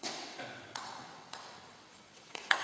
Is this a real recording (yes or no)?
no